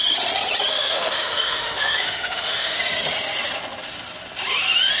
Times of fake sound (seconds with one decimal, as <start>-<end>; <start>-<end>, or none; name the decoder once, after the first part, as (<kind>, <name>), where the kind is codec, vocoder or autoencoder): 0.7-2.8 (autoencoder, DAC-VAE)